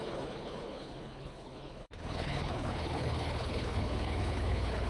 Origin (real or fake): fake